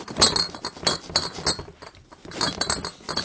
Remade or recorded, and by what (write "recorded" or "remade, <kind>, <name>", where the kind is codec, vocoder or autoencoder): recorded